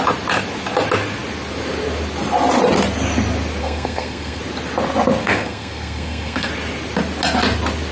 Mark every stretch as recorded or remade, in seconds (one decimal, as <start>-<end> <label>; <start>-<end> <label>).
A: 0.0-3.6 recorded; 3.6-4.4 remade; 4.4-5.2 recorded; 5.2-6.5 remade; 6.5-7.9 recorded